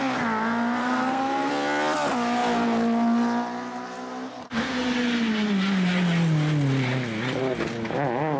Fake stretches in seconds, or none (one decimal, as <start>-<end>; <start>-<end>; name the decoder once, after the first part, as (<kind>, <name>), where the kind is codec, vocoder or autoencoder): 0.8-1.5 (codec, SNAC)